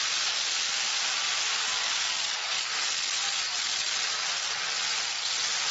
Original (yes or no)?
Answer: yes